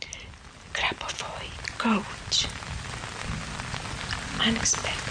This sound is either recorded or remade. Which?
recorded